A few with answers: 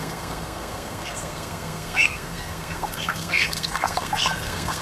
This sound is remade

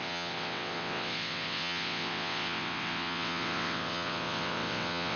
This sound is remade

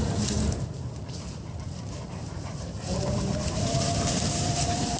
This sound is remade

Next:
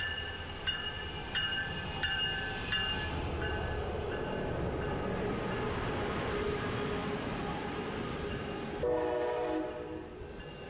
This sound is recorded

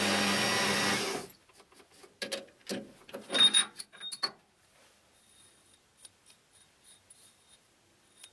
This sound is recorded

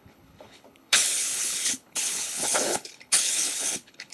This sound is remade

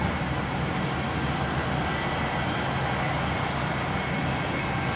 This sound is recorded